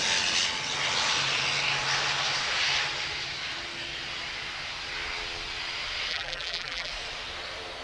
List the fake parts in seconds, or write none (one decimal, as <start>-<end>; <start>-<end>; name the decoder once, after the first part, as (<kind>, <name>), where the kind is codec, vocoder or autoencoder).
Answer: 6.1-6.9 (vocoder, BigVGAN v2)